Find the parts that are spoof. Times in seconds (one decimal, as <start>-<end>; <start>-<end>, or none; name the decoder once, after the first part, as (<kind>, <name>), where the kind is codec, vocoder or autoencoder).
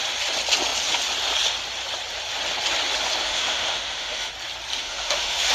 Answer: 3.2-4.3 (autoencoder, DAC-VAE); 4.7-5.5